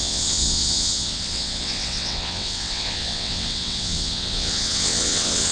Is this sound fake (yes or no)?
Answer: yes